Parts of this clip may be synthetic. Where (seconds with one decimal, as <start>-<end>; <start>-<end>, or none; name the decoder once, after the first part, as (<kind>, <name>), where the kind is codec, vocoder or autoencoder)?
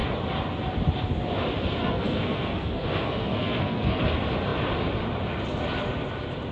1.8-4.0 (codec, SNAC)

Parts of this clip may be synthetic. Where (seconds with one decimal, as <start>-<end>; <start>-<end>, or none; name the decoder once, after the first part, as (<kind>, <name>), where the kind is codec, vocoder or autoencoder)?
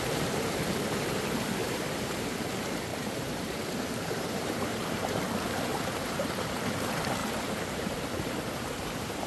1.6-2.5 (vocoder, BigVGAN v2); 2.9-5.2; 5.7-6.8; 7.2-8.0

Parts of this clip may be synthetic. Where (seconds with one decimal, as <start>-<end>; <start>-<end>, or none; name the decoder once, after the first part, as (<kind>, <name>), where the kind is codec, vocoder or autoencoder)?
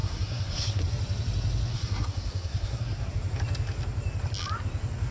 0.0-0.8 (codec, SNAC); 1.7-3.1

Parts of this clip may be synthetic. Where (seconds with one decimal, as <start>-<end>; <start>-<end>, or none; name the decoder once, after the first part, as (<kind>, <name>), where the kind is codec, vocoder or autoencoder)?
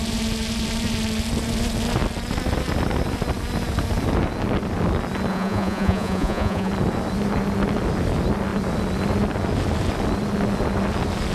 5.3-6.7 (vocoder, Vocos)